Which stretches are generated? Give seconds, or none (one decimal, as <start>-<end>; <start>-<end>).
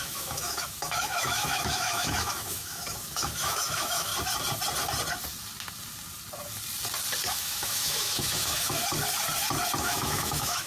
0.0-4.1; 7.3-8.8; 9.8-10.7